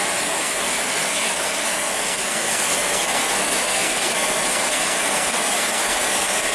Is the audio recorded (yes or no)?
no